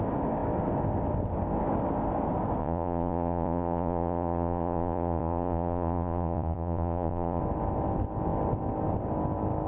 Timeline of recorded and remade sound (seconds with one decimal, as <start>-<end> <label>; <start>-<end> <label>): 0.0-2.6 recorded; 2.6-7.4 remade; 7.4-9.7 recorded